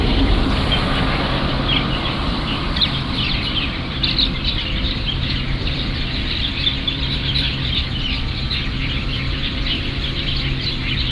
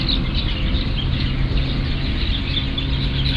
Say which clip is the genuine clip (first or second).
second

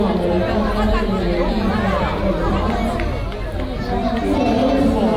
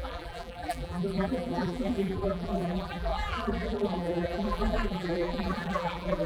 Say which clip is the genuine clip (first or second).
first